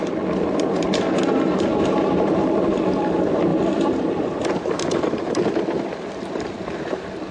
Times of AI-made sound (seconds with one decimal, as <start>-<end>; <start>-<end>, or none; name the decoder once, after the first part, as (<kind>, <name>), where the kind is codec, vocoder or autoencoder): 1.7-2.8 (vocoder, BigVGAN v2); 3.5-6.8